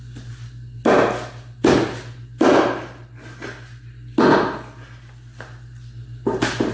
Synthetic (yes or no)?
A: no